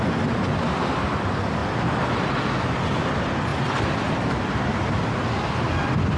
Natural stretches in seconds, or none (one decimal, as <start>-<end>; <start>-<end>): 1.6-2.8; 3.5-5.3